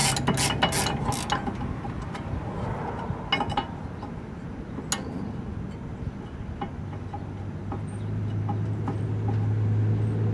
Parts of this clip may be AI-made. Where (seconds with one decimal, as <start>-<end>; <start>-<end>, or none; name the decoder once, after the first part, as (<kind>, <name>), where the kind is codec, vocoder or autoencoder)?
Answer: none